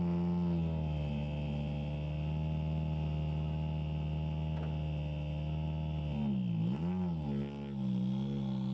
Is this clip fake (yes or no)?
no